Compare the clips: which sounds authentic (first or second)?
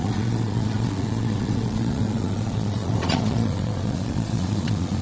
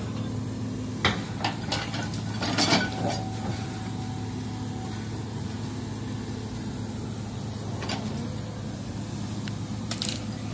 second